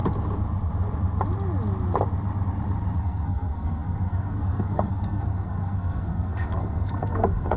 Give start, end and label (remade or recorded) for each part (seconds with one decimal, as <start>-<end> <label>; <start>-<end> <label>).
0.0-3.0 recorded; 3.0-7.6 remade